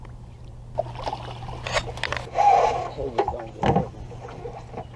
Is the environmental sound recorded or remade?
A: recorded